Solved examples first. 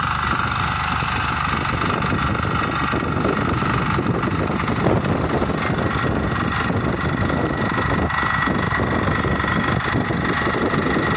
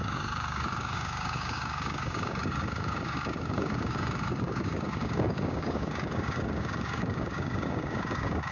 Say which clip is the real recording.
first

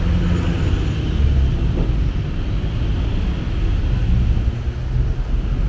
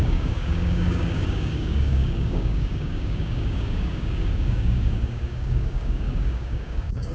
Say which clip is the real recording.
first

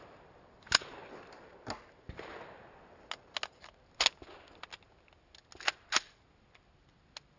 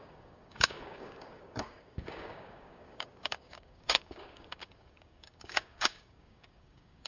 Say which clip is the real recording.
first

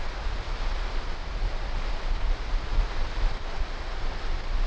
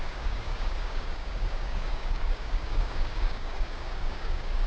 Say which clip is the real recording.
first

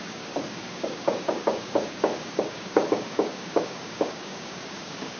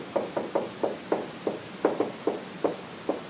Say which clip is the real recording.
second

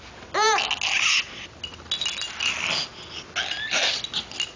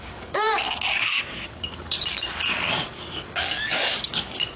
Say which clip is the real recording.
first